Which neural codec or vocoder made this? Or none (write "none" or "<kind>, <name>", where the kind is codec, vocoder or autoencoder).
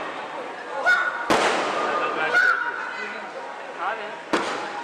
none